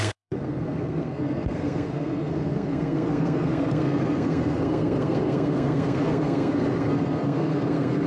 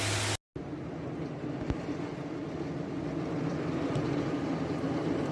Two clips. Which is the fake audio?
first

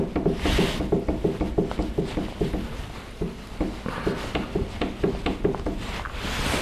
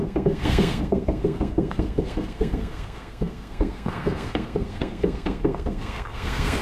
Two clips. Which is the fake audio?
second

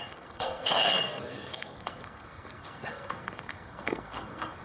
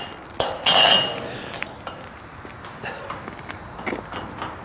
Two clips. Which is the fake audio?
first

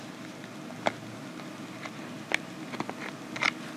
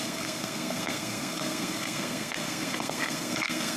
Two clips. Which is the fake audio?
second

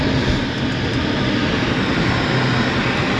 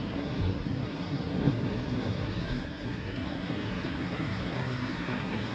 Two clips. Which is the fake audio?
second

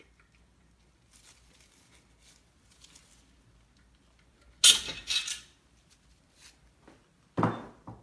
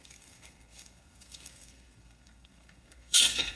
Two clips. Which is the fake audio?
second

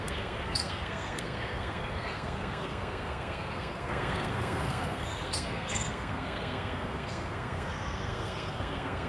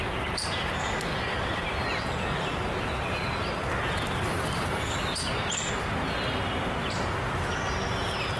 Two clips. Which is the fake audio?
first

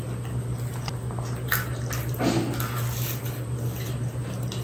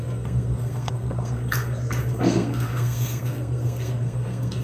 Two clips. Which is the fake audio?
second